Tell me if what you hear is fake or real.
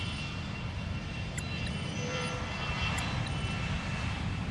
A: fake